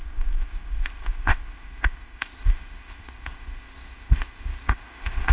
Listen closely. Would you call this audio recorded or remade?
remade